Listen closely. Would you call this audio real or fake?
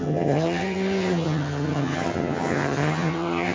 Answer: fake